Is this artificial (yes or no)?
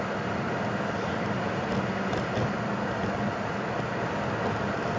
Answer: no